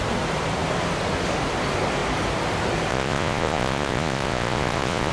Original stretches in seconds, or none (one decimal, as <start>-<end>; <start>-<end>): 0.0-2.9